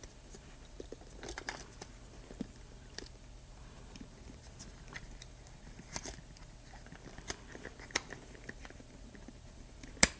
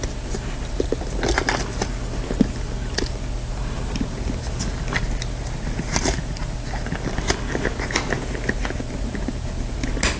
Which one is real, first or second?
second